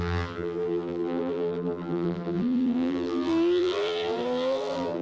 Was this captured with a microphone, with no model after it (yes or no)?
no